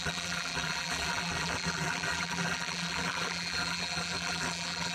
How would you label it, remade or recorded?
remade